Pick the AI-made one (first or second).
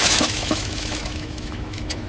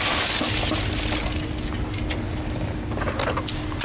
first